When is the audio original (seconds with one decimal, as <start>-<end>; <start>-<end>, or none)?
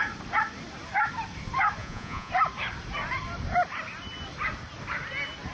0.0-1.8; 2.3-5.5